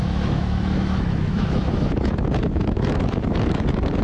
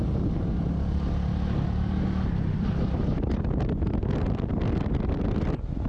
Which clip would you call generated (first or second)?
first